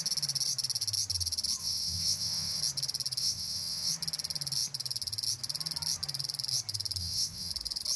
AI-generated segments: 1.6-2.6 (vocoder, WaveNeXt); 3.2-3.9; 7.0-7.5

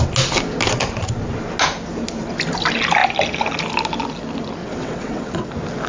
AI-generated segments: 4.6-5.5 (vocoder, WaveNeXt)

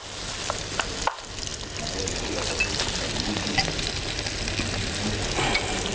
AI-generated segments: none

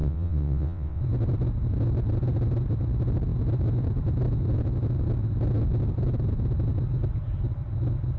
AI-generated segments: 0.0-1.0 (vocoder, WaveNeXt)

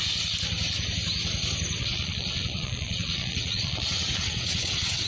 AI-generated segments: 1.8-5.1 (vocoder, WaveNeXt)

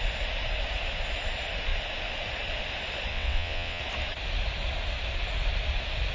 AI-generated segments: 3.1-3.8 (vocoder, WaveNeXt)